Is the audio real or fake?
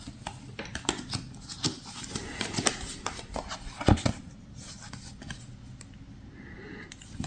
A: real